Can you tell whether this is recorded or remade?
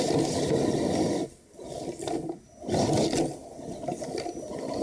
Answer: recorded